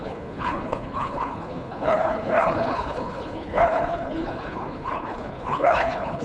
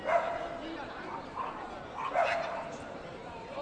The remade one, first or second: first